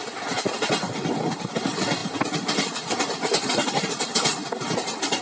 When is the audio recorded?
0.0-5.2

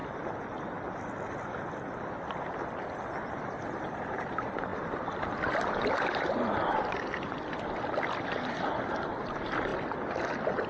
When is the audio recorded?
0.0-3.4

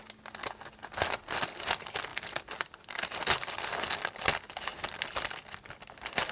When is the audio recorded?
0.0-2.1; 3.7-4.7

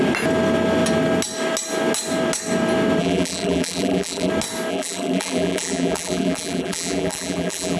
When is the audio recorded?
0.0-3.0; 4.3-4.7